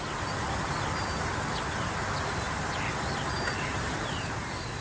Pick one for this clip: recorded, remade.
recorded